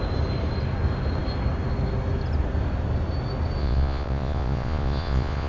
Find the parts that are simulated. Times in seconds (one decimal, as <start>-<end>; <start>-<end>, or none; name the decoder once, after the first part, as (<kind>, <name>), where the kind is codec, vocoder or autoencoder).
3.6-5.5 (vocoder, Vocos)